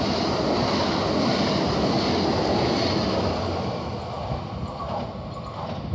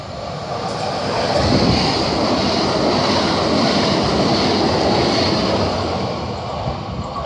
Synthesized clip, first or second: second